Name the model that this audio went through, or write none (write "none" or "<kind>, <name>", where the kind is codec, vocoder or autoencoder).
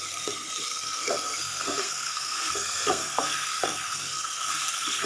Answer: codec, SNAC